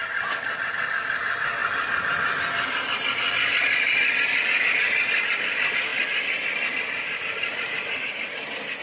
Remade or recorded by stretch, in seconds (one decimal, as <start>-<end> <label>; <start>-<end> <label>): 0.0-5.9 recorded; 5.9-8.0 remade; 8.0-8.8 recorded

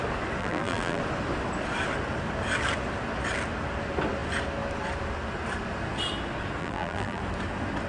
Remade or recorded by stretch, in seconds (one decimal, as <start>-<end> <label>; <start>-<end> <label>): 0.0-0.4 recorded; 0.4-1.0 remade; 1.0-6.6 recorded; 6.6-7.2 remade; 7.2-7.9 recorded

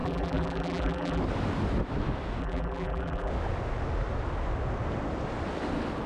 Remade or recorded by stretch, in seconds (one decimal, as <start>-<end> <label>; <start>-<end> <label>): 0.0-1.2 remade; 1.2-2.4 recorded; 2.4-3.3 remade; 3.3-6.1 recorded

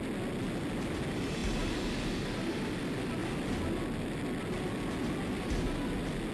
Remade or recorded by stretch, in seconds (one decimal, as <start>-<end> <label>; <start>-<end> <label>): 0.0-6.3 recorded

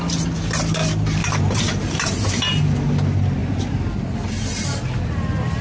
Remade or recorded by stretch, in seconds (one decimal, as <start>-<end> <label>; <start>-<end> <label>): 0.0-1.2 recorded; 1.2-2.6 remade; 2.6-5.6 recorded

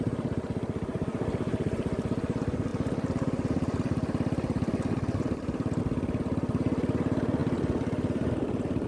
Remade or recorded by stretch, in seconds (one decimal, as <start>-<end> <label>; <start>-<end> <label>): 0.0-2.7 recorded; 2.7-5.8 remade; 5.8-7.4 recorded; 7.4-8.3 remade; 8.3-8.9 recorded